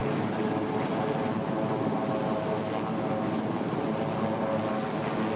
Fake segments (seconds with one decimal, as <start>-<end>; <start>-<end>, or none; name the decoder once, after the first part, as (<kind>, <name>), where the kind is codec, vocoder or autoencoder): none